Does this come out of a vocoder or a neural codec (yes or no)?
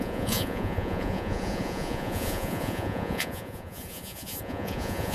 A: yes